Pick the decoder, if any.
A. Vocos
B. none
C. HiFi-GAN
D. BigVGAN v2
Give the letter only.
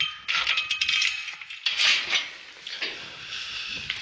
B